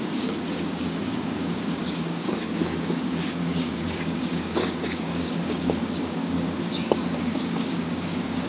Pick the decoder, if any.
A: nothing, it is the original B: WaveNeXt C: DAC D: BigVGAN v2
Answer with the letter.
C